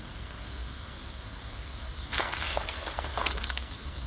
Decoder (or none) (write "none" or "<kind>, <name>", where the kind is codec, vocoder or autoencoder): codec, SNAC